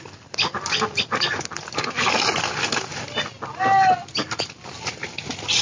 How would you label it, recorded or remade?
recorded